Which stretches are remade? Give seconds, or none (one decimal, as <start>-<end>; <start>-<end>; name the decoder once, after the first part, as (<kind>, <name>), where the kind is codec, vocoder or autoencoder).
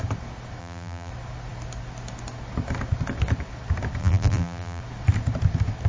0.6-1.1 (vocoder, BigVGAN v2); 4.0-4.8